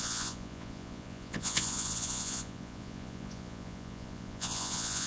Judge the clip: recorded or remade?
remade